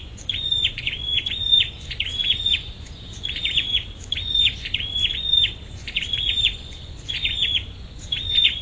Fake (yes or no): yes